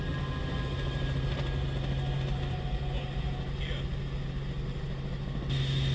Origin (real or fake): real